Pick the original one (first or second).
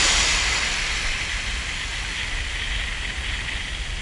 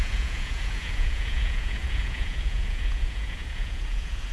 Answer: first